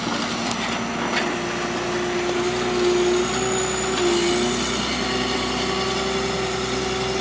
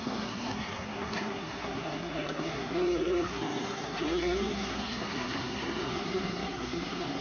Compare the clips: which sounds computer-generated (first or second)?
second